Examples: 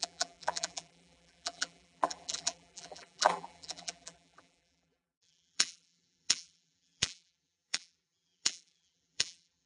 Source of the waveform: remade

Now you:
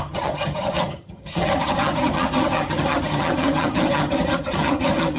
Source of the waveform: remade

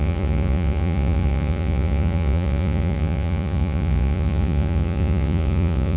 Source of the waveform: remade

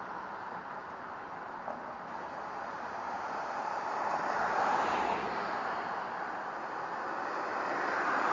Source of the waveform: remade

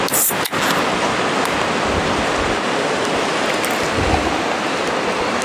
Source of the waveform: recorded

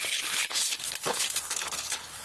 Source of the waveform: remade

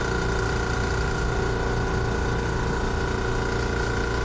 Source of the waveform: recorded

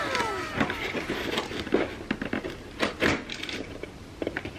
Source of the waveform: recorded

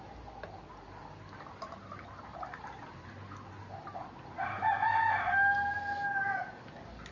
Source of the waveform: recorded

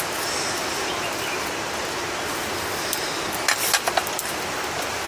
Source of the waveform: recorded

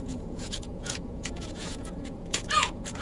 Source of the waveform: remade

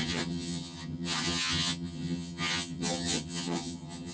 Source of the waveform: remade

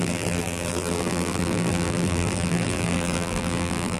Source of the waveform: remade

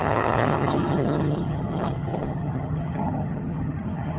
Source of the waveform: remade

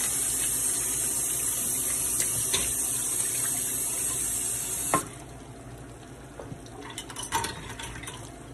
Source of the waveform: recorded